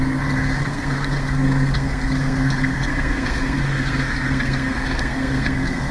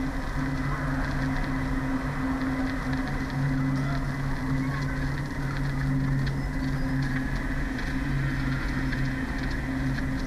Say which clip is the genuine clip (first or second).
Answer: second